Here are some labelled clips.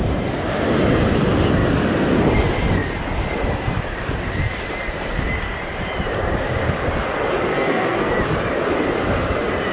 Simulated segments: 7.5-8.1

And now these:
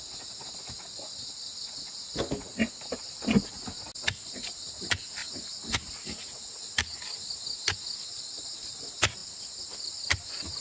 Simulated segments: none

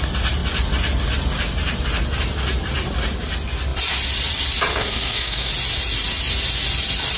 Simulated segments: 4.7-5.5

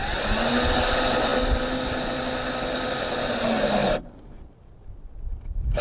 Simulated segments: none

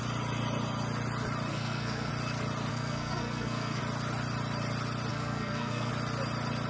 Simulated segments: 1.5-2.1; 2.7-3.8; 5.1-5.9

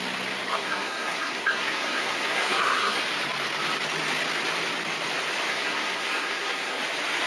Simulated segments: 0.5-3.0; 5.5-6.8

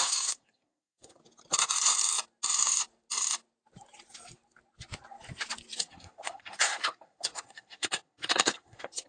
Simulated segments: 0.0-1.2; 5.8-9.1

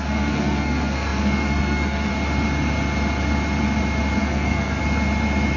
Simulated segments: 0.0-2.1; 4.2-4.8